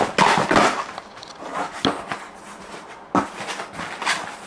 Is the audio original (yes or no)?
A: yes